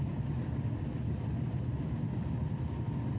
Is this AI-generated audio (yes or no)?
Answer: no